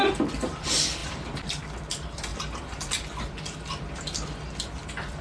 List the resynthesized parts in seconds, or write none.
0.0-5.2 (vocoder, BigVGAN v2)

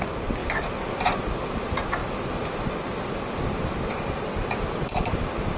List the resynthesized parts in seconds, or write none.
none